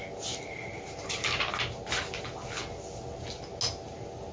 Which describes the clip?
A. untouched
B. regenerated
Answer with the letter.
A